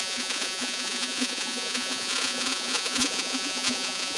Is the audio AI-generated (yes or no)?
yes